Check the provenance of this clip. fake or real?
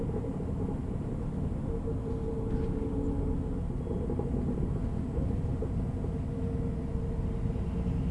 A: real